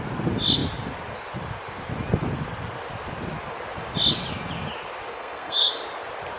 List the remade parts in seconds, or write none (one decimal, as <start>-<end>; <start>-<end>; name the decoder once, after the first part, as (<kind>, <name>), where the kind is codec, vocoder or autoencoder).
5.1-5.8 (codec, SNAC)